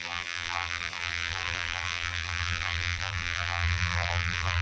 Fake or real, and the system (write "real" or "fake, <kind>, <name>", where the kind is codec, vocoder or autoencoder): fake, vocoder, BigVGAN v2